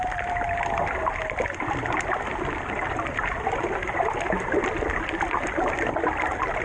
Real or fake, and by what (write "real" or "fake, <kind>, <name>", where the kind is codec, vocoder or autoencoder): real